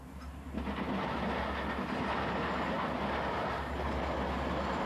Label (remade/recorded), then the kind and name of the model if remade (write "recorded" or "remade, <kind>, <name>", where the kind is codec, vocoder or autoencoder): recorded